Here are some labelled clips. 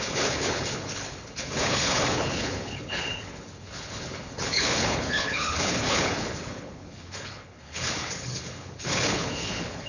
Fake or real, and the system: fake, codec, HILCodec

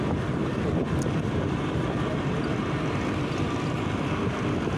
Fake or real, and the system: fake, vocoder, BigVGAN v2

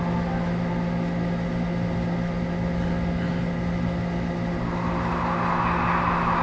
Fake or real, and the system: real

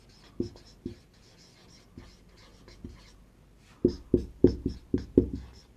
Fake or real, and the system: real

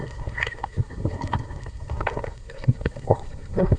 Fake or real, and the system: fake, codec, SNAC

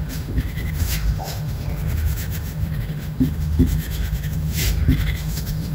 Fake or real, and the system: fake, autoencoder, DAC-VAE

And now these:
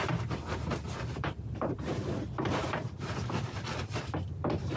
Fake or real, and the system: fake, vocoder, BigVGAN v2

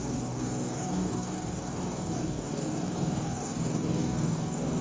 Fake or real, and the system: fake, codec, DAC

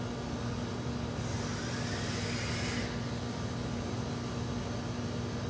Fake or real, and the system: real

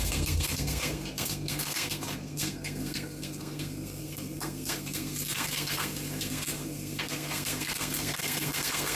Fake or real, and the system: fake, codec, SNAC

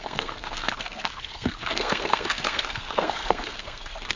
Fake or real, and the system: fake, codec, SNAC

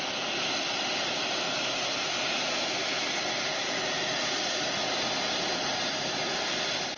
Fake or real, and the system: real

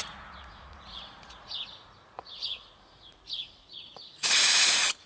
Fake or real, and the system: fake, vocoder, Vocos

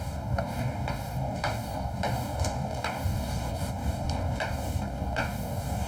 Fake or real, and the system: fake, codec, DAC